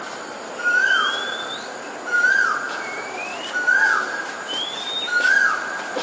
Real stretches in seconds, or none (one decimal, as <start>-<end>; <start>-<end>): 3.3-4.1